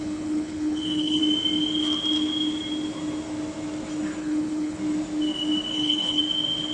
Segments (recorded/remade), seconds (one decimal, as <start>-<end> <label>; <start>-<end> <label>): 0.0-1.2 remade; 1.2-4.2 recorded; 4.2-4.8 remade; 4.8-5.7 recorded; 5.7-6.2 remade; 6.2-6.7 recorded